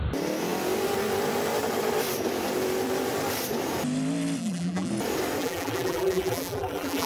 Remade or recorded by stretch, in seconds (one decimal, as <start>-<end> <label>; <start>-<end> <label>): 0.0-4.4 recorded; 4.4-4.9 remade; 4.9-5.4 recorded; 5.4-7.1 remade